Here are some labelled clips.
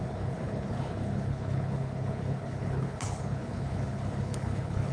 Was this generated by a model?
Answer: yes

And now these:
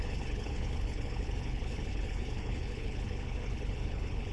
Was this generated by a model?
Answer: yes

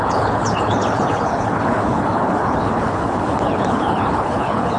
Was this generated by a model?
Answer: yes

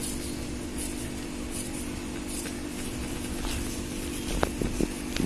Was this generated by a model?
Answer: no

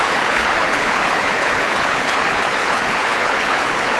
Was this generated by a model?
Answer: yes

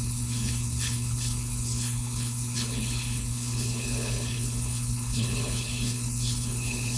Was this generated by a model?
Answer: yes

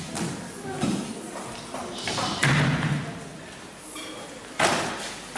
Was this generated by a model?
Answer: no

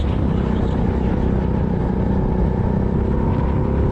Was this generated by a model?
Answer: no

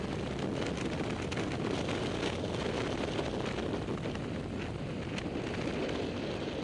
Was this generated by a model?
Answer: no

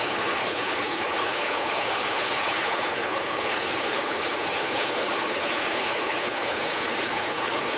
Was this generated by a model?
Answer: yes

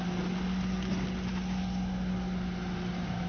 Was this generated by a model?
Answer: no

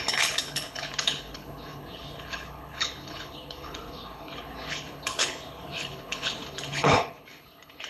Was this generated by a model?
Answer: yes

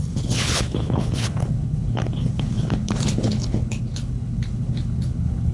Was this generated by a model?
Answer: yes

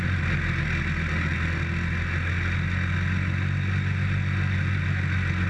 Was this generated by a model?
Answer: no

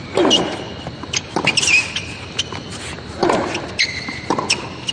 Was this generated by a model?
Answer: no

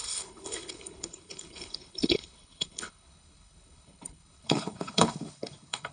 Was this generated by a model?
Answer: yes